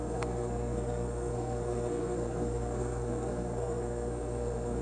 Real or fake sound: fake